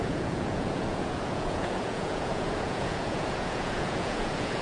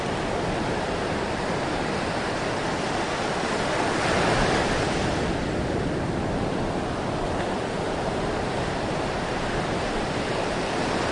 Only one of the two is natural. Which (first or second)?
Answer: second